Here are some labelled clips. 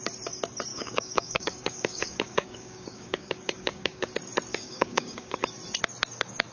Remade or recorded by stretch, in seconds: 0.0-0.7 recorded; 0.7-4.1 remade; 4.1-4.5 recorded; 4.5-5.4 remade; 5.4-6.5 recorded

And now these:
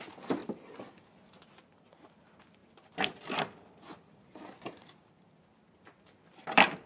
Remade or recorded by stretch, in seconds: 0.0-6.9 recorded